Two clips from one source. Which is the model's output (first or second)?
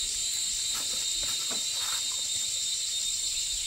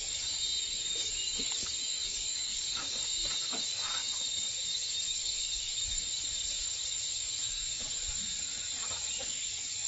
second